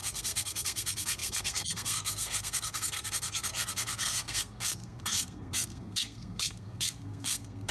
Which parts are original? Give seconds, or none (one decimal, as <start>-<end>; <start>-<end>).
none